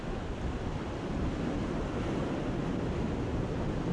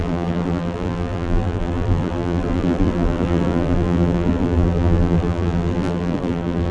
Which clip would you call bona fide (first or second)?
first